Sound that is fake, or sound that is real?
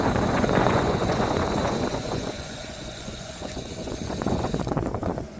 fake